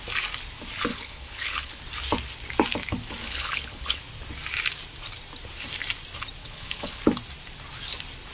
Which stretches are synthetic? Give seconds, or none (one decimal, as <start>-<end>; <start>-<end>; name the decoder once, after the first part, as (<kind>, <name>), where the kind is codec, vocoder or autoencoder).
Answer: 0.9-1.8 (codec, HILCodec); 3.2-4.0; 6.4-7.0